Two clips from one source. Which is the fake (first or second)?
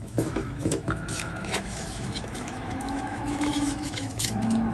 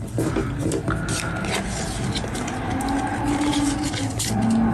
first